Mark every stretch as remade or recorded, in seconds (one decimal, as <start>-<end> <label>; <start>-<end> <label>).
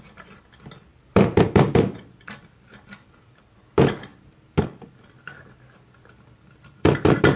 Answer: 0.0-0.9 recorded; 0.9-1.8 remade; 1.8-7.4 recorded